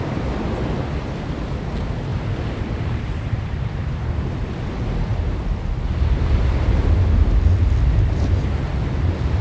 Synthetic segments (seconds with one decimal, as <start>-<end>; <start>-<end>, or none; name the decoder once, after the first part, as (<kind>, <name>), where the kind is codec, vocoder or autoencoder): 2.1-4.3 (vocoder, BigVGAN v2)